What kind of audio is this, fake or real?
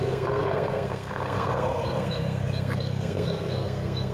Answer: fake